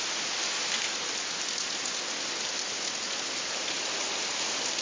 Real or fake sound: real